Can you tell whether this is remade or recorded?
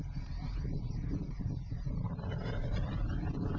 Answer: remade